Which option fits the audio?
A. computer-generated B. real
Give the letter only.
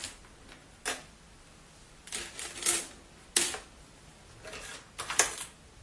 B